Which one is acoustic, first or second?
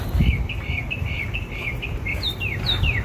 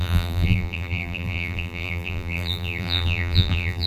first